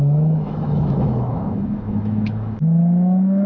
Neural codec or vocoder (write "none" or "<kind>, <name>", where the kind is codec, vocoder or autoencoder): autoencoder, DAC-VAE